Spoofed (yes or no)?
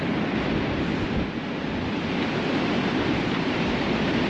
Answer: no